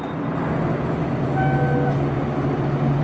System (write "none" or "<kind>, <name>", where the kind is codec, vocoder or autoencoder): none